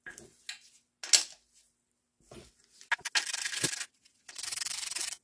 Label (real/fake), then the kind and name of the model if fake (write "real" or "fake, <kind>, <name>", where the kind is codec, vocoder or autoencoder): real